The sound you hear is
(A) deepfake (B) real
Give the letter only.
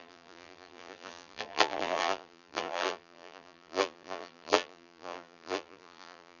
A